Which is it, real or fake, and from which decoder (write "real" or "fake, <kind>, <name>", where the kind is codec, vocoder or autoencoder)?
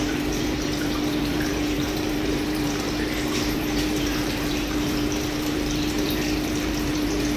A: fake, vocoder, BigVGAN v2